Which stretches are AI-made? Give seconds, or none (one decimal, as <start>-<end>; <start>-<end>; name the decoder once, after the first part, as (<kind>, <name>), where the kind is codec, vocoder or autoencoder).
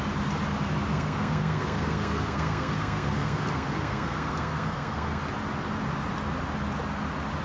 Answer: 0.9-5.2 (codec, SNAC)